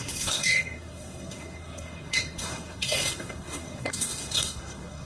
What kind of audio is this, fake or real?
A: fake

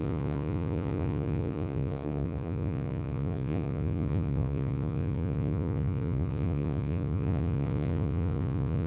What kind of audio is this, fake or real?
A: fake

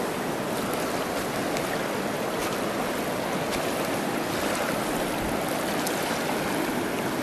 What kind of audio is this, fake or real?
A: real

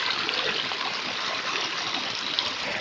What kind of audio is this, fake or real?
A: real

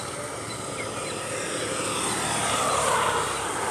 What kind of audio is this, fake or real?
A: real